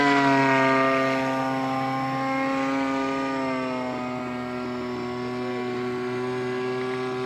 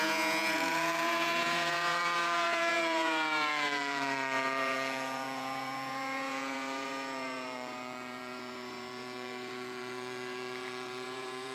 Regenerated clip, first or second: second